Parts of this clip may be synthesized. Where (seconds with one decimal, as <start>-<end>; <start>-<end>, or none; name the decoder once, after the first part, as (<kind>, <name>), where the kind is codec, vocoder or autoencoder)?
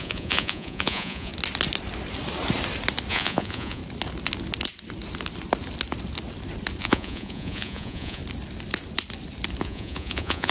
0.0-1.3 (vocoder, Vocos); 3.1-3.8; 6.8-8.2; 9.6-10.5